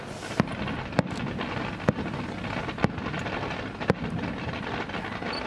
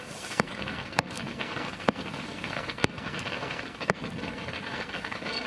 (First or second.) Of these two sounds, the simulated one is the second